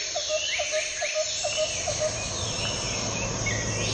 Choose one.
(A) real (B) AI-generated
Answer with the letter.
A